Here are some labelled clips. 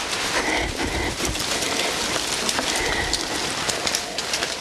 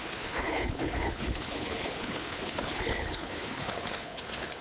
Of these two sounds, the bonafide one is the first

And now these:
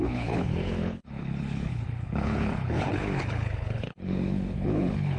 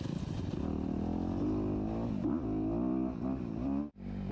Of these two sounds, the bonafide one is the second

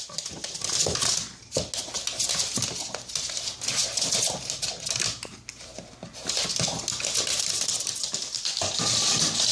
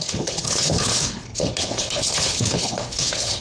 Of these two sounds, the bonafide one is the first